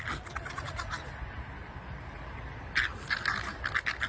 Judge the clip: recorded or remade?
recorded